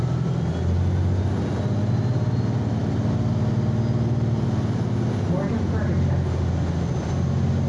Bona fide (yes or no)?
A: yes